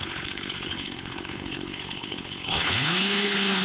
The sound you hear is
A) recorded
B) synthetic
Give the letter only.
B